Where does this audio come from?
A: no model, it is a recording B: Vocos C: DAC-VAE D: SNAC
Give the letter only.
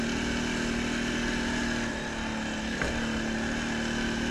A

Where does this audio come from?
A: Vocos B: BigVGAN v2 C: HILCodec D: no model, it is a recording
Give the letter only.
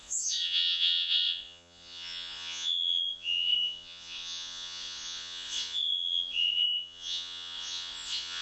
A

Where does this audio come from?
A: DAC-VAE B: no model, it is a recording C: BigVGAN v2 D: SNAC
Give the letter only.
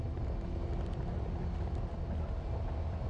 B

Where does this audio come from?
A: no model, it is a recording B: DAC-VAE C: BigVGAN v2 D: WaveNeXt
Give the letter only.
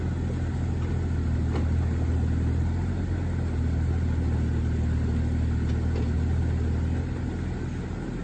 A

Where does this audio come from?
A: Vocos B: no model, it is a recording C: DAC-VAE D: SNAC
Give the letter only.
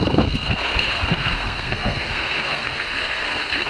D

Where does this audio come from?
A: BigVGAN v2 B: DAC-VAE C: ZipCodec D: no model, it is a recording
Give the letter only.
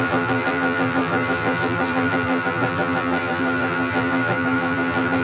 A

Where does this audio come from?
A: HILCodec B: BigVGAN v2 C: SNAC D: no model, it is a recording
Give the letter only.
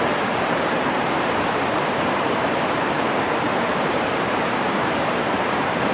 B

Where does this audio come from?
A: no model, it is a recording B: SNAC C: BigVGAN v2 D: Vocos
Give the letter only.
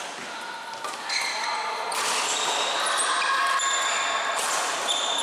A